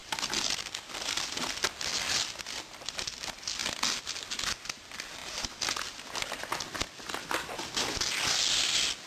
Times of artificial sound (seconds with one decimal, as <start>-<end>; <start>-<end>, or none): none